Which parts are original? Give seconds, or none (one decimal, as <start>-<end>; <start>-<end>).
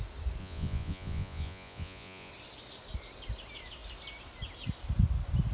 0.0-0.4; 2.3-5.5